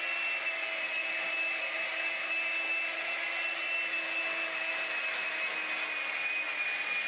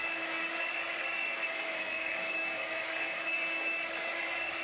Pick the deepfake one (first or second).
second